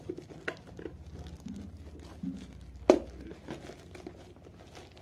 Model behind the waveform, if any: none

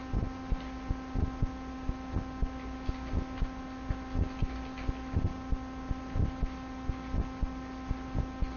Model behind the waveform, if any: none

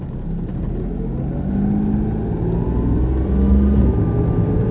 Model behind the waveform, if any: none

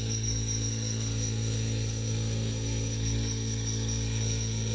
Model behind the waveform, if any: codec, SNAC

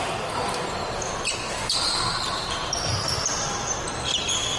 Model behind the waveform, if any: none